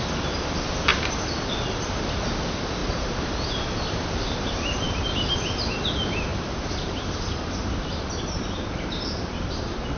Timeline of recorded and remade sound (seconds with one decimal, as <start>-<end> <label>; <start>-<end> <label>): 0.0-2.8 recorded; 2.8-3.5 remade; 3.5-6.3 recorded; 6.3-9.5 remade; 9.5-10.0 recorded